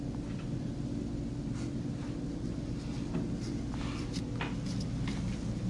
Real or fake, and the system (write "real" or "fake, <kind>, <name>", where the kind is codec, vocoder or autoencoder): real